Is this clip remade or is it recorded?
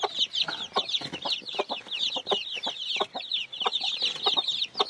recorded